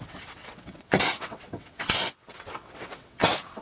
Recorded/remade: remade